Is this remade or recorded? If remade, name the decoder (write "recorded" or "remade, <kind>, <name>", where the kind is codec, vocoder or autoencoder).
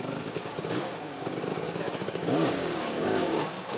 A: remade, codec, DAC